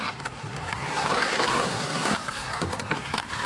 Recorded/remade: remade